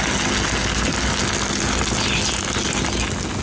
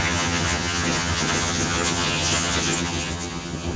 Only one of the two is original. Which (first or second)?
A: first